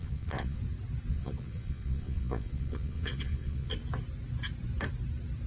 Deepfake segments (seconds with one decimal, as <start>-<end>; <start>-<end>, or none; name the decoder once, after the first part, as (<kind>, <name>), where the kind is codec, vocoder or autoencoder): 0.0-0.6 (vocoder, Vocos); 1.1-3.7

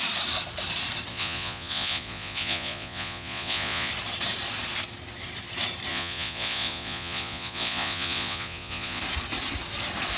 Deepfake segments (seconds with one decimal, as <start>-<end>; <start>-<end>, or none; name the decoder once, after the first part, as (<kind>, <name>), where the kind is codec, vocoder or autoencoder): 1.1-3.9 (vocoder, Vocos); 5.9-9.0

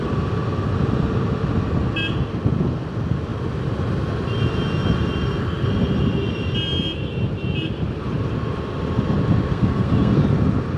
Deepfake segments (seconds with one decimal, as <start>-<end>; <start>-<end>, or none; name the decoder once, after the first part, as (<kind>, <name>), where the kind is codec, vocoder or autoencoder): 9.5-10.2 (codec, SNAC)

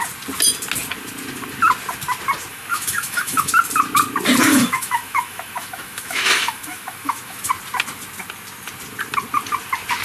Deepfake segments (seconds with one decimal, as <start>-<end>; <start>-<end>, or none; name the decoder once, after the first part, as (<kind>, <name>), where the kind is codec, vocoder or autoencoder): 2.5-3.5 (autoencoder, DAC-VAE); 4.5-7.5

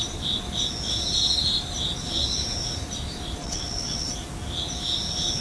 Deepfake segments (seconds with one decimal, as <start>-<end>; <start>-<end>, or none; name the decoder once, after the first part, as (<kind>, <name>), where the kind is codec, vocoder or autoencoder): 3.4-4.1 (vocoder, WaveNeXt)